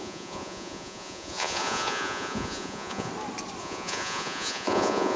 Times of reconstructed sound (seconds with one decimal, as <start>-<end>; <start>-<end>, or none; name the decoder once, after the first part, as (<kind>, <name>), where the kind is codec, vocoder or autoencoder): 0.0-3.1 (vocoder, Vocos); 3.6-5.2